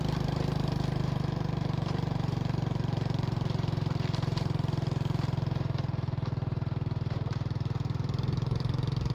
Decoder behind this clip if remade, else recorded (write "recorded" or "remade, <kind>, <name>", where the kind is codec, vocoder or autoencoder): remade, vocoder, BigVGAN v2